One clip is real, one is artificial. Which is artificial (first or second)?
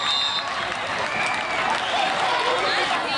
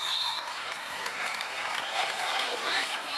second